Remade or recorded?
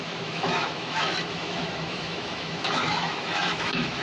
remade